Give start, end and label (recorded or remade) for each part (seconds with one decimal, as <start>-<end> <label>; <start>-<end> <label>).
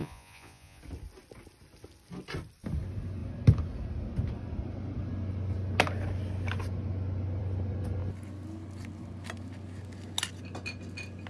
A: 0.0-0.8 remade; 0.8-11.3 recorded